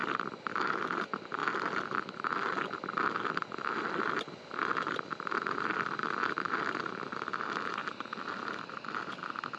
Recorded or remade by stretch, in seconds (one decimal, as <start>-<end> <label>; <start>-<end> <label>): 0.0-9.6 recorded